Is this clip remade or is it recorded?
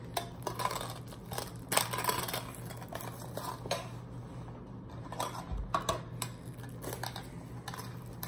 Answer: recorded